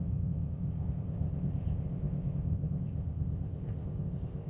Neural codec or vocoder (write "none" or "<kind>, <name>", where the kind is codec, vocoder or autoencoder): codec, ZipCodec